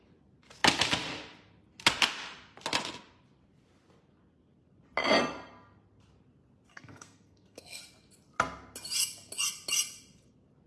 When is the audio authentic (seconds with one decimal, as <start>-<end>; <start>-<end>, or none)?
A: 0.0-6.7; 7.8-10.7